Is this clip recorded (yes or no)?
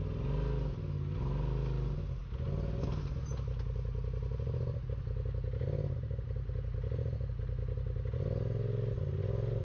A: yes